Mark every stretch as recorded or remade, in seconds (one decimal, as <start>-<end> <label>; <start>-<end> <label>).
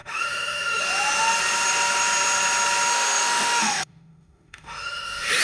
0.0-0.8 remade; 0.8-2.9 recorded; 2.9-5.4 remade